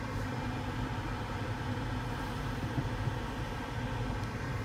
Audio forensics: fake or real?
real